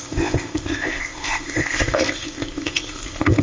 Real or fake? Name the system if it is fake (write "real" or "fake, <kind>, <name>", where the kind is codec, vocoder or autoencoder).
fake, codec, ZipCodec